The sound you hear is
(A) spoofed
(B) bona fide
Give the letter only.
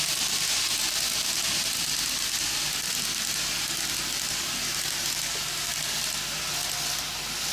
B